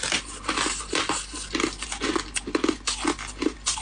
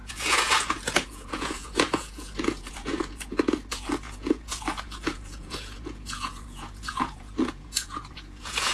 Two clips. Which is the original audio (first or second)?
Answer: first